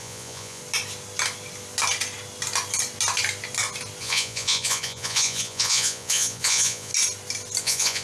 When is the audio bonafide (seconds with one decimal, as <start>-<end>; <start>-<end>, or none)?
0.6-4.0; 6.9-7.6